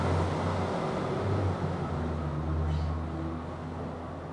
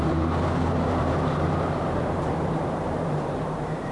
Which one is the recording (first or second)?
first